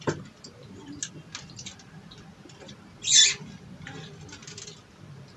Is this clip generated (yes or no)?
no